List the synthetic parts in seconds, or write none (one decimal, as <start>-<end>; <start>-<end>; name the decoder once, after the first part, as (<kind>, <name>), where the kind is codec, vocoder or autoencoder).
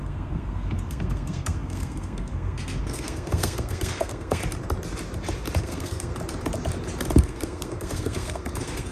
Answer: 0.0-4.4 (codec, SNAC); 5.6-6.1; 7.2-8.9